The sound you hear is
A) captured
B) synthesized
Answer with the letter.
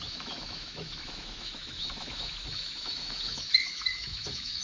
B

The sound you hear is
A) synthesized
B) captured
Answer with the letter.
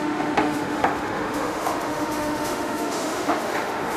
A